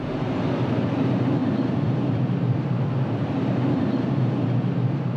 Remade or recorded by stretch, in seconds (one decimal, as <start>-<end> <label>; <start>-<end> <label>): 0.0-1.4 recorded; 1.4-2.9 remade; 2.9-5.2 recorded